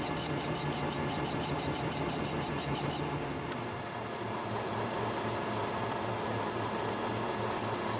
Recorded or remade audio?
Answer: recorded